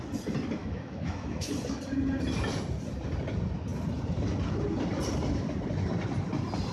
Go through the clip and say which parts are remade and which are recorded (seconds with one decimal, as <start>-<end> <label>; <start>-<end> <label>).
0.0-0.6 recorded; 0.6-1.5 remade; 1.5-6.7 recorded